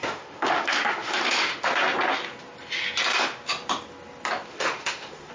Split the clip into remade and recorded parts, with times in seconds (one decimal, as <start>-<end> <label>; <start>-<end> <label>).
0.0-1.7 remade; 1.7-4.5 recorded; 4.5-5.3 remade

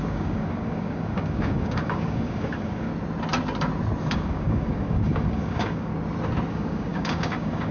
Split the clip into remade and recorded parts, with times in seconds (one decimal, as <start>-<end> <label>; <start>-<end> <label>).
0.0-2.9 remade; 2.9-4.0 recorded; 4.0-5.9 remade; 5.9-6.5 recorded; 6.5-7.7 remade

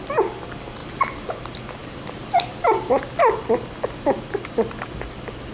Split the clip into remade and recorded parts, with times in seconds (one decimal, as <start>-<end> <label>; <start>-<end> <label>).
0.0-0.8 recorded; 0.8-1.3 remade; 1.3-1.8 recorded; 1.8-3.0 remade; 3.0-5.5 recorded

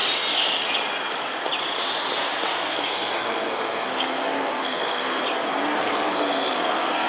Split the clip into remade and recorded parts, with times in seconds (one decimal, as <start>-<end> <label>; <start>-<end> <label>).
0.0-2.7 recorded; 2.7-5.2 remade; 5.2-5.8 recorded; 5.8-7.1 remade

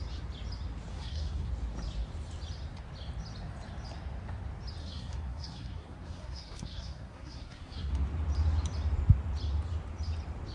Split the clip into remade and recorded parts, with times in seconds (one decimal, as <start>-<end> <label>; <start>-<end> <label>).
0.0-0.9 recorded; 0.9-1.5 remade; 1.5-4.8 recorded; 4.8-7.9 remade; 7.9-10.5 recorded

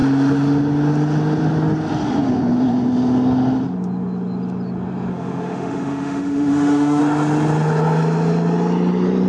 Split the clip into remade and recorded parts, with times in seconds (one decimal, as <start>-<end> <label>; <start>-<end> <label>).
0.0-5.1 recorded; 5.1-7.0 remade; 7.0-9.3 recorded